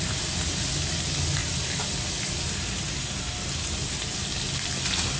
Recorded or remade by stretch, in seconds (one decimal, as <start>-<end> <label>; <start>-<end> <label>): 0.0-5.2 recorded